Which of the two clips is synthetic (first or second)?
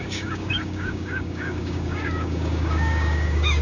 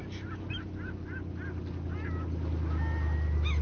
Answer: first